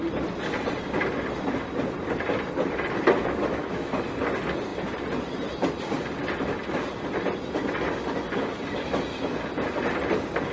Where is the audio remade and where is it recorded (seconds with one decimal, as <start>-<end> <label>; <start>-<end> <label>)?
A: 0.0-3.2 recorded; 3.2-3.9 remade; 3.9-10.5 recorded